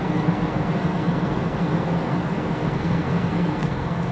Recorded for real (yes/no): no